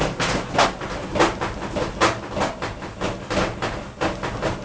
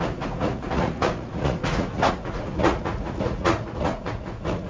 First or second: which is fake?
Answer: second